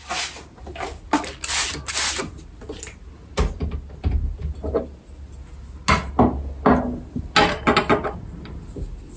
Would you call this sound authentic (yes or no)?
yes